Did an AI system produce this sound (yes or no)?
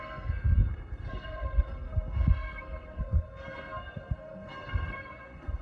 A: yes